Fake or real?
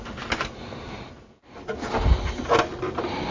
real